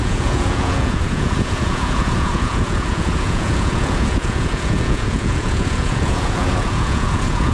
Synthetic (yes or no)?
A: yes